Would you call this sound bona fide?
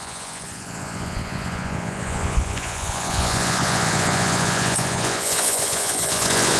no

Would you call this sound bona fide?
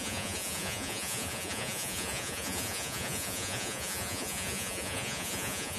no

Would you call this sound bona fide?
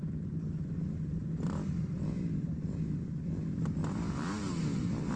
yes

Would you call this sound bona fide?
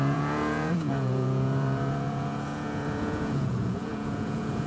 no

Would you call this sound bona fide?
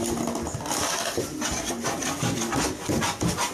yes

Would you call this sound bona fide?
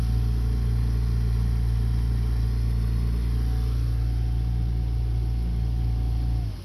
yes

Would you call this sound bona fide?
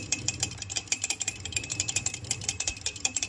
no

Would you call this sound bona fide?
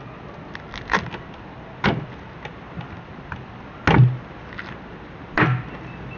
yes